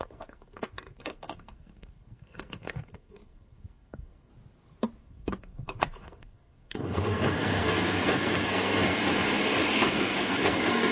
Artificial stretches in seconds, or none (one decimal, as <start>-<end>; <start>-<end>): 0.0-4.3; 5.0-9.0; 9.7-10.9